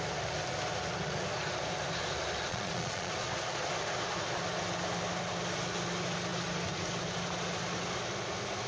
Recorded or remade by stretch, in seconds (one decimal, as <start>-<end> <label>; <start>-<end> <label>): 0.0-2.5 recorded; 2.5-3.1 remade; 3.1-8.7 recorded